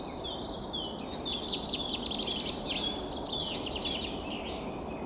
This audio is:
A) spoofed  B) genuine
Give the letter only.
B